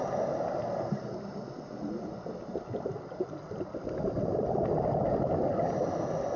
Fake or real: real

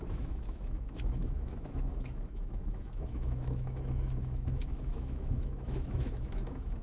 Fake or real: fake